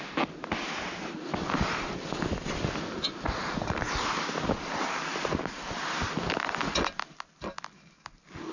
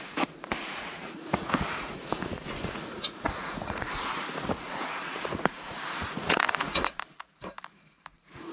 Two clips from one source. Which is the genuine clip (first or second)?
first